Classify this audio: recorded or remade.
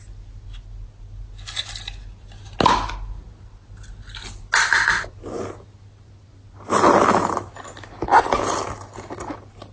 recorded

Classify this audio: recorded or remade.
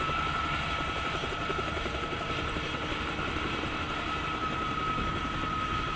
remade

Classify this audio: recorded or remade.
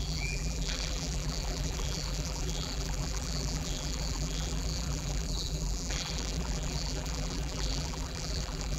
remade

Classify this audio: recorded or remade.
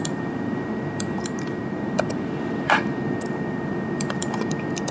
remade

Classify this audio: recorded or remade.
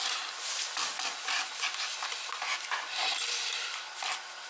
recorded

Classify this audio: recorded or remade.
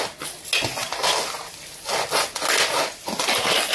recorded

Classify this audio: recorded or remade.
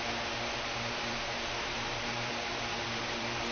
remade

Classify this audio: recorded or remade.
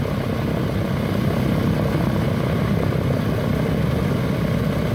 recorded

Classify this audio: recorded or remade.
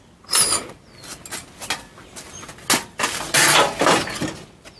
recorded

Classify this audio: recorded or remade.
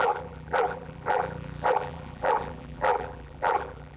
remade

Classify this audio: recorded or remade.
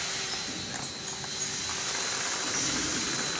recorded